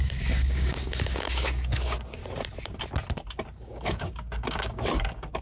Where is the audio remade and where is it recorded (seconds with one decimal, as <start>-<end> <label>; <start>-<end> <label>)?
0.0-2.2 remade; 2.2-3.7 recorded; 3.7-5.4 remade

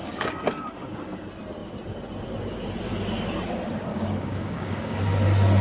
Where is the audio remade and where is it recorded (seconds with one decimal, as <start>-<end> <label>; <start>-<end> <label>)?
0.0-1.2 remade; 1.2-3.9 recorded; 3.9-5.0 remade; 5.0-5.6 recorded

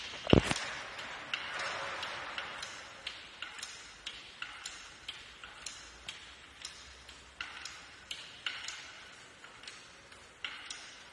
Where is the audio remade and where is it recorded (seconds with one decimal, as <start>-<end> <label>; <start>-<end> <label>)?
0.0-11.1 recorded

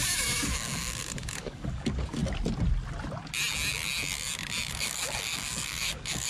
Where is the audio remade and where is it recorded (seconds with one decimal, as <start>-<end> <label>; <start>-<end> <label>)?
0.0-2.2 remade; 2.2-4.7 recorded; 4.7-6.3 remade

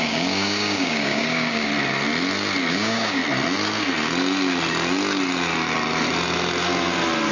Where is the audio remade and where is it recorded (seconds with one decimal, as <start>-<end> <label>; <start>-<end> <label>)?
0.0-1.7 remade; 1.7-2.7 recorded; 2.7-3.2 remade; 3.2-7.3 recorded

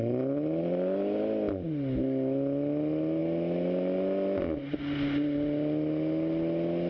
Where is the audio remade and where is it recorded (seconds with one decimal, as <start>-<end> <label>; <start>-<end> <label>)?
0.0-6.9 recorded

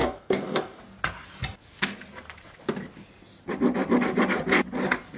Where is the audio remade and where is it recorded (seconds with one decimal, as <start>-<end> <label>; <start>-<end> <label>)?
0.0-0.8 remade; 0.8-5.2 recorded